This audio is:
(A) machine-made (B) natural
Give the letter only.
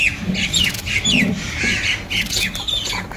B